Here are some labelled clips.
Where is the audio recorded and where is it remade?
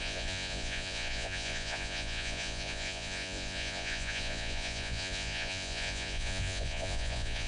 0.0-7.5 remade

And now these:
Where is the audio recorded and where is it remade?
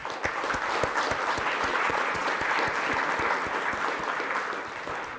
0.0-1.7 recorded; 1.7-2.3 remade; 2.3-5.2 recorded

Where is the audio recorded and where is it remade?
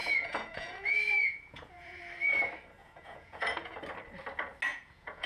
0.0-2.0 remade; 2.0-2.8 recorded; 2.8-3.8 remade; 3.8-4.7 recorded; 4.7-5.3 remade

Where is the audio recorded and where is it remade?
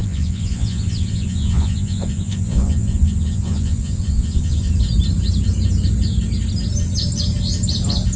0.0-4.7 remade; 4.7-8.2 recorded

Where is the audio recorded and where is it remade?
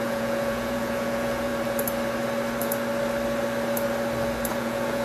0.0-1.5 remade; 1.5-4.5 recorded; 4.5-5.0 remade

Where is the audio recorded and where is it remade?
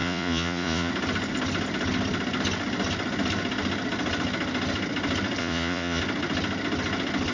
0.0-0.9 remade; 0.9-5.4 recorded; 5.4-6.0 remade; 6.0-7.3 recorded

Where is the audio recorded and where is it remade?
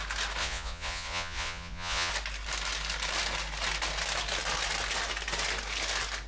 0.0-0.4 recorded; 0.4-2.1 remade; 2.1-6.3 recorded